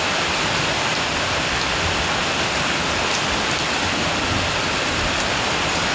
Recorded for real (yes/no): yes